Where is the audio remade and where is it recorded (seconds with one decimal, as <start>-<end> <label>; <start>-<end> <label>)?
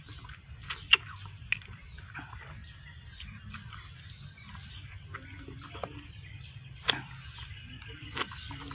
0.0-8.7 recorded